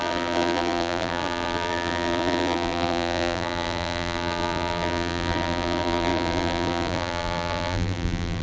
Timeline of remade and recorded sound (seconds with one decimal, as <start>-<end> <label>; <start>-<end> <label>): 0.0-8.4 remade